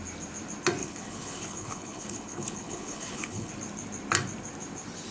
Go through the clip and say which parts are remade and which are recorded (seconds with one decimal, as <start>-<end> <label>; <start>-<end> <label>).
0.0-0.8 recorded; 0.8-3.5 remade; 3.5-5.1 recorded